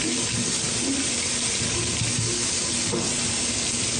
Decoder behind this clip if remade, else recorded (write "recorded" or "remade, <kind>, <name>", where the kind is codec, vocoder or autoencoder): recorded